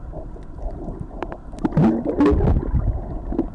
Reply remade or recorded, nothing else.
recorded